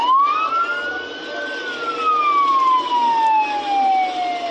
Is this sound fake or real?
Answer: real